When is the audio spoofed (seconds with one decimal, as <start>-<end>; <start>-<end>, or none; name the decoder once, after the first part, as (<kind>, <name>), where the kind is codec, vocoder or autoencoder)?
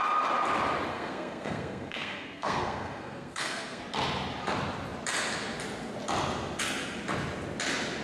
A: 0.9-3.8 (codec, SNAC)